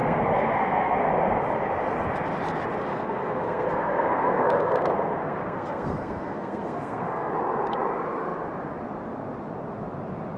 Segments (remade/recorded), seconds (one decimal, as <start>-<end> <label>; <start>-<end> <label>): 0.0-1.1 remade; 1.1-2.9 recorded; 2.9-7.3 remade; 7.3-10.4 recorded